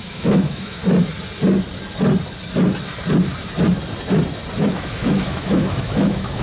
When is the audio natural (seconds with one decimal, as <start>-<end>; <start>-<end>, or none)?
0.8-4.6